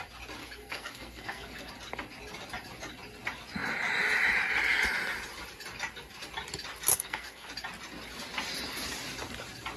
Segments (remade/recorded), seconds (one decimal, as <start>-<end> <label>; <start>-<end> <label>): 0.0-0.4 recorded; 0.4-1.7 remade; 1.7-6.9 recorded; 6.9-7.5 remade; 7.5-9.8 recorded